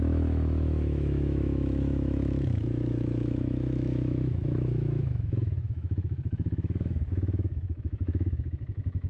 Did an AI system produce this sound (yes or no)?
yes